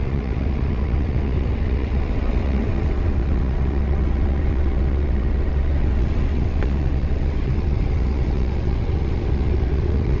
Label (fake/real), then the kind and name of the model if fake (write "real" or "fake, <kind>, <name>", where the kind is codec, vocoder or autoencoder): fake, vocoder, WaveNeXt